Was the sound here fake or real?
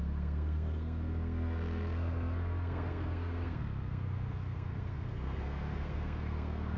fake